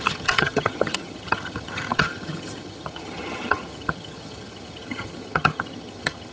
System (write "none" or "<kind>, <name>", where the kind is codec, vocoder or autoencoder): vocoder, HiFi-GAN